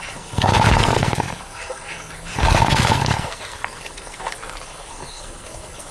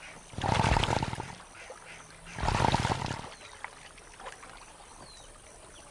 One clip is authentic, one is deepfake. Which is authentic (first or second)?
second